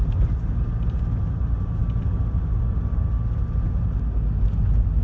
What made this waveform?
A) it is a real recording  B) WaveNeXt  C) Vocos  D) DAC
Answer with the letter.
A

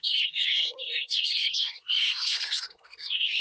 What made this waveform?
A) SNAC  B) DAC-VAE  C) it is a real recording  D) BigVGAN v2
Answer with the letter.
A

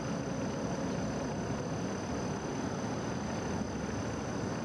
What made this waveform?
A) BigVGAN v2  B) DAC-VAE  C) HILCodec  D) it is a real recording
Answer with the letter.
D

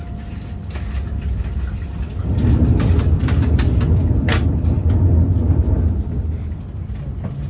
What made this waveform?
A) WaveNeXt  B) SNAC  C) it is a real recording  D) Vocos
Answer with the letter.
C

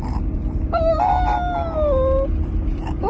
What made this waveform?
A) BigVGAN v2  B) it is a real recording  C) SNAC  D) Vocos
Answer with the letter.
B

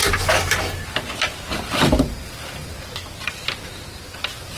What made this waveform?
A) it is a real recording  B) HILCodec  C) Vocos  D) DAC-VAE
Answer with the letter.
A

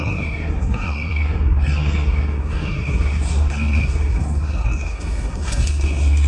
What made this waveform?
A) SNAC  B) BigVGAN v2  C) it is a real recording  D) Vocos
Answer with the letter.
A